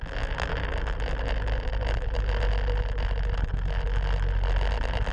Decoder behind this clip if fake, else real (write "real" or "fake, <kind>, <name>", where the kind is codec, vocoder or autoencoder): real